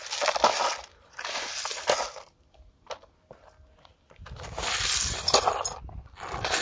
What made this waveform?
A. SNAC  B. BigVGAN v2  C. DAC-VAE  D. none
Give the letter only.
D